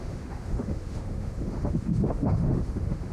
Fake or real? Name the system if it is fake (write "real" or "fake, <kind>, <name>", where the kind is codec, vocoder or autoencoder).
fake, autoencoder, DAC-VAE